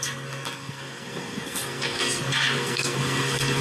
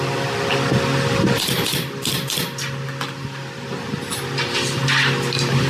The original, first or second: second